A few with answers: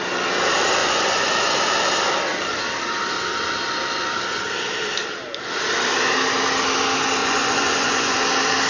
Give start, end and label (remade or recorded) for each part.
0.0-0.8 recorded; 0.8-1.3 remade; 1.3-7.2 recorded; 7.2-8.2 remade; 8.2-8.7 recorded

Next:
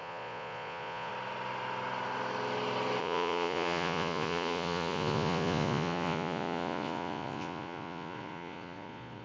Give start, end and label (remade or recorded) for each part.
0.0-1.1 remade; 1.1-3.0 recorded; 3.0-9.2 remade